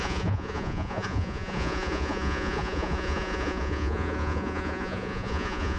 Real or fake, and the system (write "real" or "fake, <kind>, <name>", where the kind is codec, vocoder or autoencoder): fake, vocoder, Vocos